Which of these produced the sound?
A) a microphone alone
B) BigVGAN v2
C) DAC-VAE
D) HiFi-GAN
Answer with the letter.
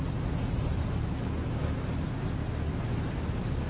A